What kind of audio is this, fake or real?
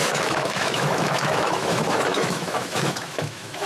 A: fake